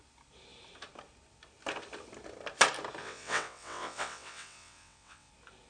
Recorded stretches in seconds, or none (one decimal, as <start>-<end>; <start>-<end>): 0.0-3.0; 5.3-5.7